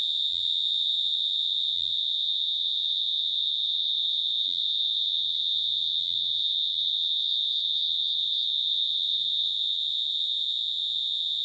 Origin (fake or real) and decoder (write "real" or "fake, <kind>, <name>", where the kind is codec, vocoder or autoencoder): fake, vocoder, Vocos